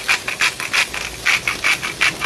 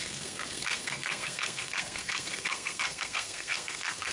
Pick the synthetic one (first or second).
second